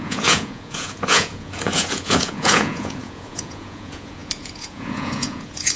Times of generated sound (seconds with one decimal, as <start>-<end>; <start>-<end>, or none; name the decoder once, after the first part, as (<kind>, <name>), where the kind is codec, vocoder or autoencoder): 0.0-5.8 (vocoder, Vocos)